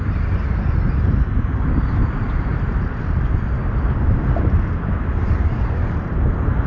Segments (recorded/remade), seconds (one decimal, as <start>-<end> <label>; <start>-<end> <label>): 0.0-2.0 recorded; 2.0-3.0 remade; 3.0-3.6 recorded; 3.6-4.6 remade; 4.6-6.7 recorded